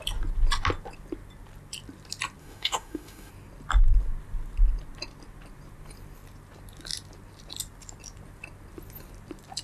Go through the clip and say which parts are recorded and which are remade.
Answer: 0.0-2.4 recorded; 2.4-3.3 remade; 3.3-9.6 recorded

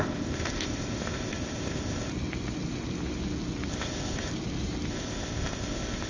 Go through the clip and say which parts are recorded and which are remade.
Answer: 0.0-2.1 remade; 2.1-3.7 recorded; 3.7-4.3 remade; 4.3-4.9 recorded; 4.9-6.1 remade

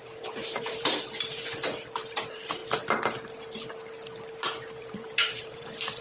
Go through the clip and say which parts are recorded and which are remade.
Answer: 0.0-2.6 remade; 2.6-4.8 recorded; 4.8-6.0 remade

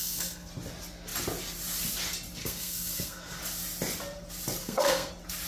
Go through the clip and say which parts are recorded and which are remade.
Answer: 0.0-0.5 remade; 0.5-2.4 recorded; 2.4-3.4 remade; 3.4-4.6 recorded; 4.6-5.1 remade; 5.1-5.5 recorded

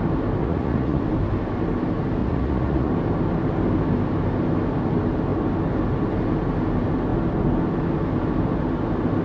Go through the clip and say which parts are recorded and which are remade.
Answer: 0.0-0.4 recorded; 0.4-1.0 remade; 1.0-2.2 recorded; 2.2-2.9 remade; 2.9-9.2 recorded

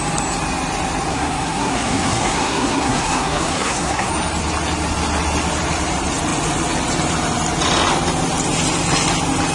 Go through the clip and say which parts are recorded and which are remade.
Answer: 0.0-1.1 recorded; 1.1-4.1 remade; 4.1-9.5 recorded